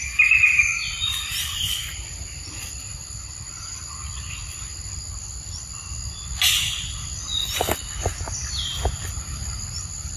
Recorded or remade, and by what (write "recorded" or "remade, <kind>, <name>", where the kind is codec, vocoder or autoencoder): recorded